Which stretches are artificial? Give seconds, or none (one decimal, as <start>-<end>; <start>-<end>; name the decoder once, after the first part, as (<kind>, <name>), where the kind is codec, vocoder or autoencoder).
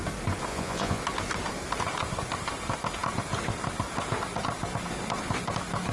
0.5-1.0 (vocoder, Vocos)